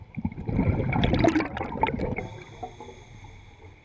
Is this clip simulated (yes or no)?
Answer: no